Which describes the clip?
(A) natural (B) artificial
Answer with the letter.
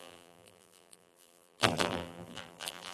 B